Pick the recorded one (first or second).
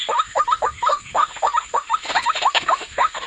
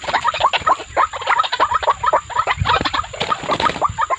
second